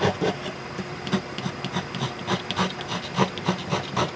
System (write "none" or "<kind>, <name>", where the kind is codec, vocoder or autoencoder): none